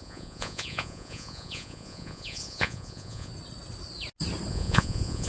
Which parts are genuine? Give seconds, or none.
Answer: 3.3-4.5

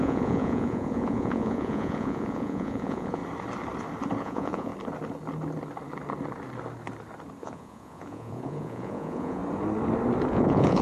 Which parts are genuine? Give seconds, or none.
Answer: 3.2-4.2; 4.7-7.4; 9.4-10.3

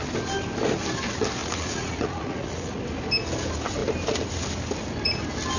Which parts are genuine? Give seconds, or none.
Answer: 0.0-1.4; 2.8-5.6

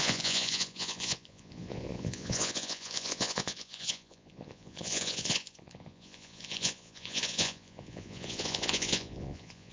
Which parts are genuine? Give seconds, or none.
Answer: none